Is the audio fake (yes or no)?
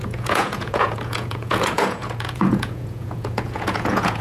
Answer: yes